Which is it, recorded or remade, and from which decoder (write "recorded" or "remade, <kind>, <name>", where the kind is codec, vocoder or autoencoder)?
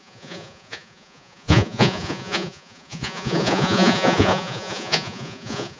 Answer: remade, vocoder, Vocos